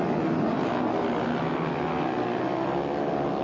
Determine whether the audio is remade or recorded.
recorded